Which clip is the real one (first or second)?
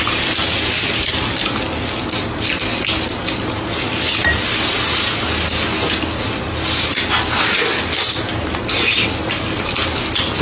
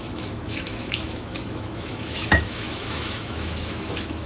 first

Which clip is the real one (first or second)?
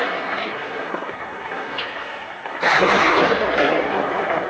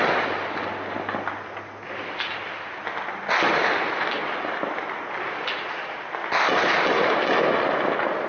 second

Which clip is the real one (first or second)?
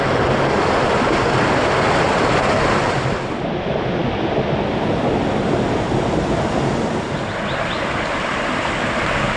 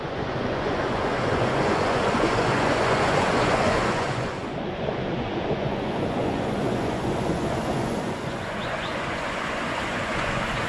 first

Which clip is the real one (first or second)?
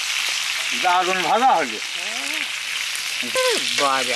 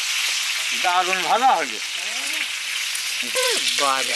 first